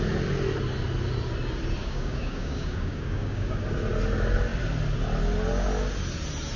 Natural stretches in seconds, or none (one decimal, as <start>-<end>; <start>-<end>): 0.0-1.8; 3.6-6.6